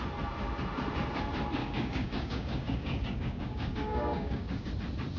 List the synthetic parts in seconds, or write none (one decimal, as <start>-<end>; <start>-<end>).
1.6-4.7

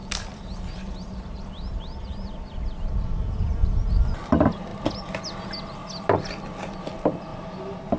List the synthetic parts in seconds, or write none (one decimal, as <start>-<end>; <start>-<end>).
none

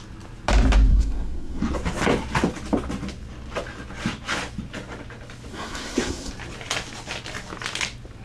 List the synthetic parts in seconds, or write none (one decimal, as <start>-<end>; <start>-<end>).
0.9-1.6; 5.5-6.3

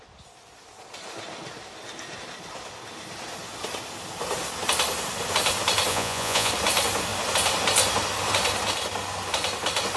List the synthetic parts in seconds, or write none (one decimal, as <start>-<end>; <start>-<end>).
5.9-6.5

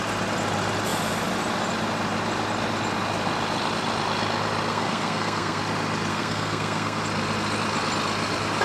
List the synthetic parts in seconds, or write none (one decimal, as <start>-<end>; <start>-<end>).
4.7-5.6; 6.1-7.0